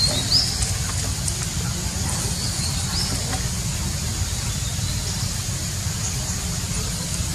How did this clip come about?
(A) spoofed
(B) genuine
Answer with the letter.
B